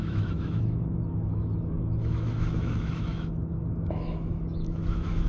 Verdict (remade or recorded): remade